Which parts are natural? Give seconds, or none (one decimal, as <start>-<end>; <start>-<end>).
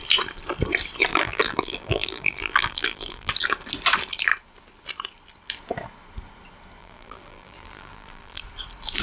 0.0-1.1; 3.3-6.8; 8.4-9.0